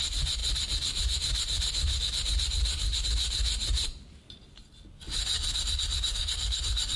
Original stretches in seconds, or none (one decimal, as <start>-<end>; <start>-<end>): 0.0-6.1; 6.6-7.0